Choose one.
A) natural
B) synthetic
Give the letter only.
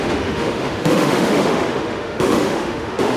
B